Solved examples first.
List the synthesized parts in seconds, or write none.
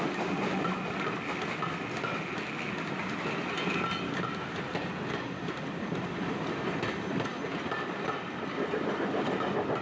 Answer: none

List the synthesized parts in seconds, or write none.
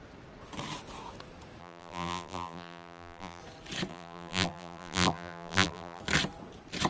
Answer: 1.6-3.4 (vocoder, BigVGAN v2); 3.9-6.0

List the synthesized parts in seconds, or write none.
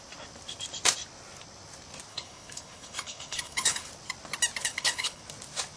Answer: 2.1-3.9 (codec, HILCodec); 4.6-5.2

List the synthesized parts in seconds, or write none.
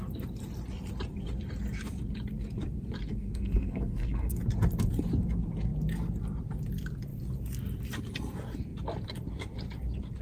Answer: 3.1-4.4 (codec, SNAC)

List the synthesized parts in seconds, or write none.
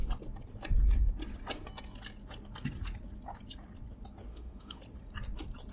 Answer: 4.3-4.8 (autoencoder, DAC-VAE)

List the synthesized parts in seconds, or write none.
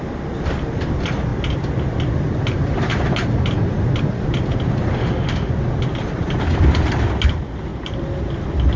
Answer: 5.0-5.5 (autoencoder, DAC-VAE)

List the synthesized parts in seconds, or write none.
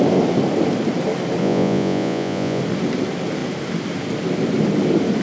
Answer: 1.4-2.6 (vocoder, Vocos)